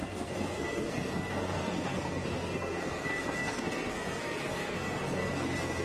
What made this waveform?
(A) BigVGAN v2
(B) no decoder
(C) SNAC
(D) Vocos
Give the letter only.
C